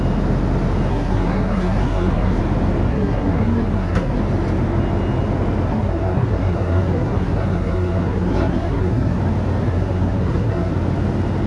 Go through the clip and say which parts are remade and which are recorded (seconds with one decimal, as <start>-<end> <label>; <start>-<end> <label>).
0.0-0.9 recorded; 0.9-2.4 remade; 2.4-2.9 recorded; 2.9-4.2 remade; 4.2-5.7 recorded; 5.7-9.2 remade; 9.2-9.6 recorded; 9.6-10.7 remade; 10.7-11.5 recorded